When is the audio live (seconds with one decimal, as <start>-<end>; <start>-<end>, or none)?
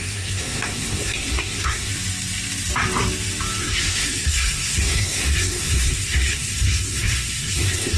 1.9-3.6